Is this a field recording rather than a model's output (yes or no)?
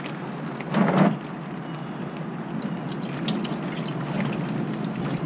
yes